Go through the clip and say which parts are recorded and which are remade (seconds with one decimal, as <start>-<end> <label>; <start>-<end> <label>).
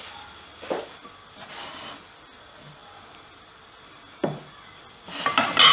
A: 0.0-5.7 recorded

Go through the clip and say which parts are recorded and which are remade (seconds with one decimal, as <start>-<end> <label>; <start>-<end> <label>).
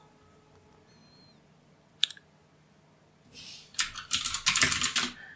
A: 0.0-5.4 recorded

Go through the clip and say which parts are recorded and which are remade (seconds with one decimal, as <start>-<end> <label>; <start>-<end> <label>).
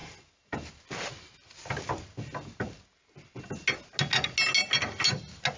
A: 0.0-5.6 recorded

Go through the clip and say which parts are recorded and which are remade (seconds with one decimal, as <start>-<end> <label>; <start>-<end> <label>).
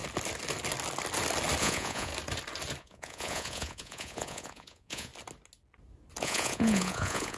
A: 0.0-1.6 recorded; 1.6-2.1 remade; 2.1-2.8 recorded; 2.8-5.1 remade; 5.1-6.2 recorded; 6.2-7.4 remade